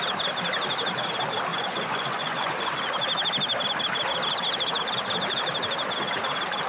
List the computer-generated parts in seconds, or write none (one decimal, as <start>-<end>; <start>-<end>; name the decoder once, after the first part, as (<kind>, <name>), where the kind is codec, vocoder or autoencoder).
1.5-2.7 (vocoder, Vocos)